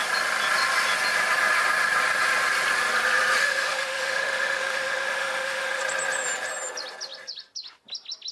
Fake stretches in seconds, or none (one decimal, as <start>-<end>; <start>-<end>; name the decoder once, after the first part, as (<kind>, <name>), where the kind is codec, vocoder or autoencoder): 3.4-5.8 (autoencoder, DAC-VAE)